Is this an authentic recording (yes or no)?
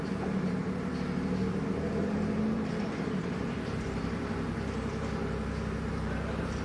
no